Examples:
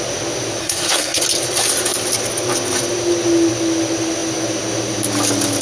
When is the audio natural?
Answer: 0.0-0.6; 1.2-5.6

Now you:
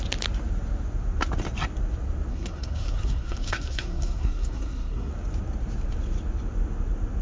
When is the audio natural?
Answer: 0.0-2.3; 5.1-7.2

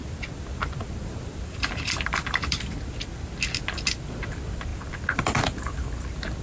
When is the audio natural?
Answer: 0.0-1.3; 2.7-6.4

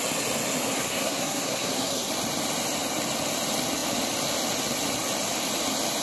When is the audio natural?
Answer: 0.0-0.7; 2.1-6.0

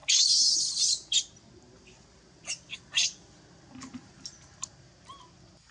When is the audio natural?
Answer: 0.0-5.7

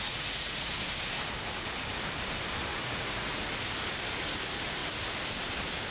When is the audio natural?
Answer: 0.7-2.7; 3.5-5.9